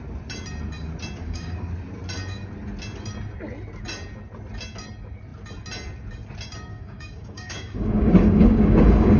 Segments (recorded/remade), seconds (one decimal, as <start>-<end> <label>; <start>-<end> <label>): 0.0-1.2 recorded; 1.2-1.7 remade; 1.7-6.7 recorded; 6.7-9.2 remade